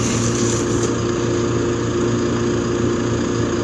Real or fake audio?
real